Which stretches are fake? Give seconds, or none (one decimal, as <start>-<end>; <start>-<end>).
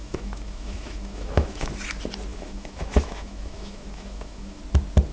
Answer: 0.0-1.7; 2.3-4.6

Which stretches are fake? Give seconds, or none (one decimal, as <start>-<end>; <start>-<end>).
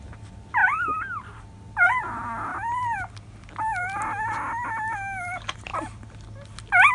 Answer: none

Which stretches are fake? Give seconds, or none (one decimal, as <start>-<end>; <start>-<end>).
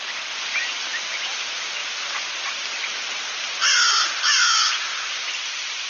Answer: none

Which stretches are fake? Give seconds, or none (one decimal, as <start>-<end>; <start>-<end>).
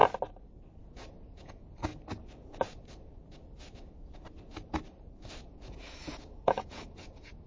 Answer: 0.8-1.9; 5.6-7.5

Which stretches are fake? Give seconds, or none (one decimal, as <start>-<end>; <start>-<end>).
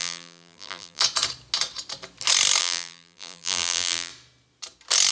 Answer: 0.0-1.0; 2.6-4.1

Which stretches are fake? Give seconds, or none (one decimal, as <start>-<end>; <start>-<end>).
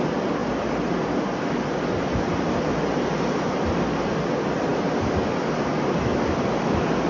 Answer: none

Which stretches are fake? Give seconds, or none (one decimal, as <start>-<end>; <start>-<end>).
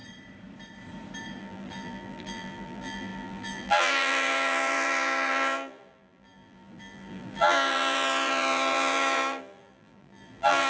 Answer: 1.4-10.7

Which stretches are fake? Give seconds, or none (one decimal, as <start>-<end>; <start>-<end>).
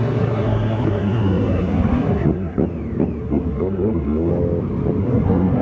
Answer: 0.0-2.6; 3.2-4.3; 5.0-5.6